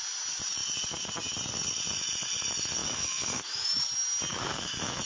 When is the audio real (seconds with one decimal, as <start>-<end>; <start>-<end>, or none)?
0.0-2.8; 3.8-4.3